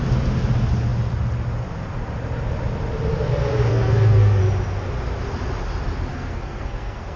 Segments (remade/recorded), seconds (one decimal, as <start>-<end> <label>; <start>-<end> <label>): 0.0-3.7 recorded; 3.7-4.4 remade; 4.4-6.1 recorded; 6.1-7.2 remade